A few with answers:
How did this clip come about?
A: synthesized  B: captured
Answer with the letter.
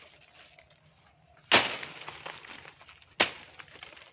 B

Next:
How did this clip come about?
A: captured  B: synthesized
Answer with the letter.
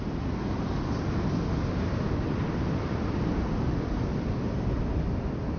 A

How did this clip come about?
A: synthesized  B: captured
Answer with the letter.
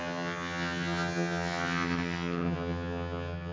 A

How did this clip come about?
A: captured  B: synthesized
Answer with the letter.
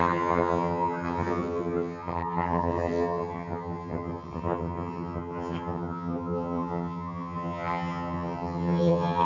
B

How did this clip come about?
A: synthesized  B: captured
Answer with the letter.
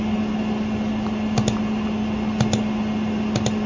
B